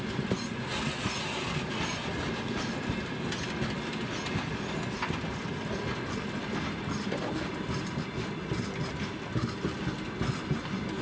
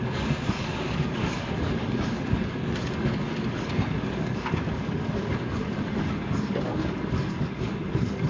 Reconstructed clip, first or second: second